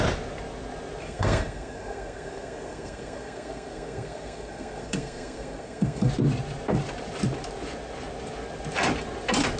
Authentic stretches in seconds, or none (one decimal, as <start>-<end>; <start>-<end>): 0.0-1.0; 6.1-9.6